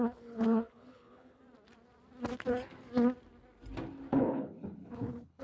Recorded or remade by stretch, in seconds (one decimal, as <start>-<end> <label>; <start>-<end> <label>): 0.0-1.4 remade; 1.4-4.1 recorded; 4.1-5.4 remade